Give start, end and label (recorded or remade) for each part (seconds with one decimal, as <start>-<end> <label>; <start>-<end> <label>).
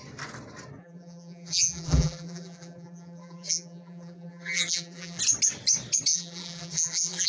0.0-0.8 recorded; 0.8-5.2 remade; 5.2-6.1 recorded; 6.1-7.3 remade